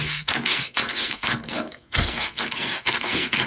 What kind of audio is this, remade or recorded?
remade